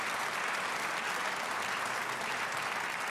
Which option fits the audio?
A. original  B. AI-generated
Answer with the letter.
A